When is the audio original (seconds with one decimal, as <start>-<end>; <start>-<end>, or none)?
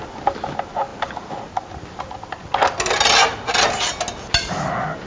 0.0-5.1